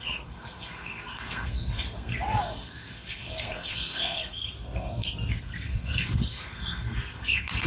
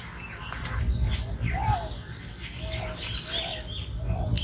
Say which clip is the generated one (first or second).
first